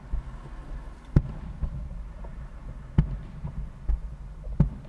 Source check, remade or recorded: recorded